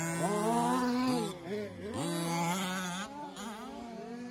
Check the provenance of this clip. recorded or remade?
recorded